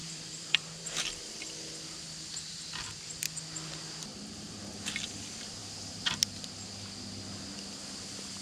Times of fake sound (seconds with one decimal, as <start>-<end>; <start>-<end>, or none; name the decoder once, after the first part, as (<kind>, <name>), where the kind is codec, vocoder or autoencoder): 0.0-1.3 (vocoder, BigVGAN v2); 4.1-4.6